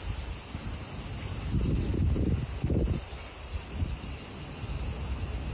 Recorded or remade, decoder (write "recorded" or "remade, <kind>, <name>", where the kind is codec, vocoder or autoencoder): recorded